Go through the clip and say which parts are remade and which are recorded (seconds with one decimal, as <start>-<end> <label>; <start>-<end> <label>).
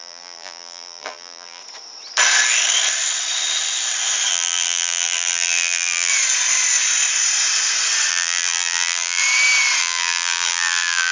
0.0-1.6 remade; 1.6-4.3 recorded; 4.3-6.1 remade; 6.1-8.1 recorded; 8.1-9.2 remade; 9.2-9.8 recorded; 9.8-11.1 remade